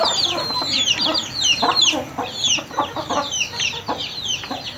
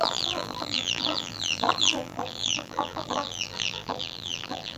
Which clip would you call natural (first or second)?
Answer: first